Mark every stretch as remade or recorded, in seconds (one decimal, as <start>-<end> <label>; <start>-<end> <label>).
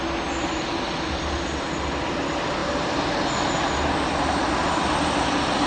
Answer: 0.0-5.7 recorded